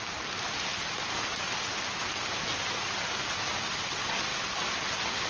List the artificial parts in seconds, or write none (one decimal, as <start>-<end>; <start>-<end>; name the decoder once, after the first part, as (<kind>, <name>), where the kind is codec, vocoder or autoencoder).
0.0-0.7 (vocoder, BigVGAN v2); 3.9-4.3